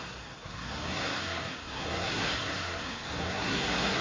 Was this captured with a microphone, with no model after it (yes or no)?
no